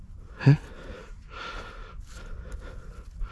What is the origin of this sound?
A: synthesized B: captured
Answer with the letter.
B